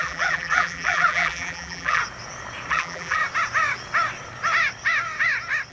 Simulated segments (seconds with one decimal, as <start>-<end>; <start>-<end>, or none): 0.0-2.0; 2.7-3.2